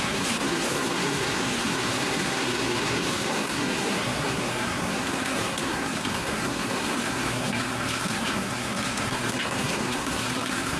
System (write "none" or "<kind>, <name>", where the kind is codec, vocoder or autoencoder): codec, SNAC